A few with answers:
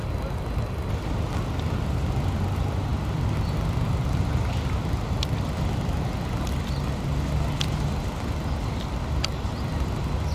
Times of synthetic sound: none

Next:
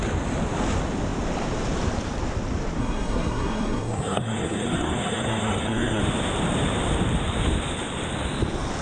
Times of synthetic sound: 2.8-6.0 (codec, SNAC)

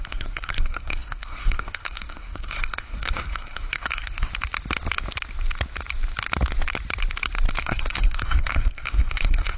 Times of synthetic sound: 0.0-4.3 (codec, SNAC); 7.6-9.6

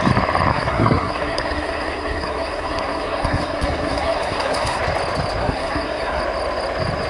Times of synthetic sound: 0.5-4.8 (codec, SNAC); 5.4-6.2

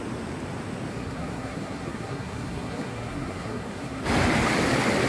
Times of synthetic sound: 0.9-4.0 (codec, SNAC)

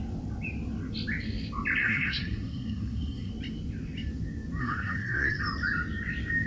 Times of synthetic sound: 1.8-3.3 (codec, SNAC); 4.6-5.4